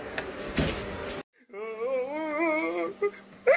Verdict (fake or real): real